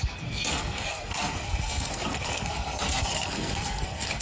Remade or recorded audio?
remade